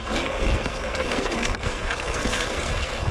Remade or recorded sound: remade